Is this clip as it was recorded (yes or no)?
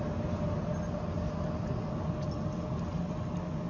yes